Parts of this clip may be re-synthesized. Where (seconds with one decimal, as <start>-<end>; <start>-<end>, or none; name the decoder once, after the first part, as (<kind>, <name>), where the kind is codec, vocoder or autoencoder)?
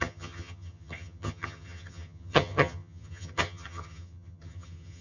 0.0-5.0 (vocoder, HiFi-GAN)